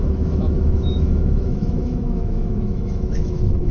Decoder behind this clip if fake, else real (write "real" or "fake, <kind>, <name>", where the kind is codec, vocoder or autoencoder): fake, autoencoder, DAC-VAE